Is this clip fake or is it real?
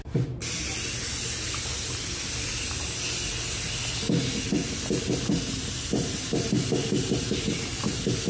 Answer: real